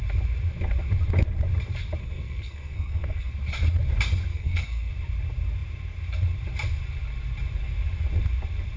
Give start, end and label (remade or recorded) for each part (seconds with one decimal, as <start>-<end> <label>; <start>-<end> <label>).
0.0-2.0 recorded; 2.0-3.3 remade; 3.3-4.3 recorded; 4.3-4.9 remade; 4.9-8.8 recorded